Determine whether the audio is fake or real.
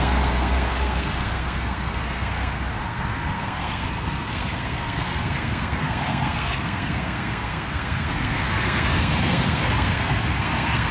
fake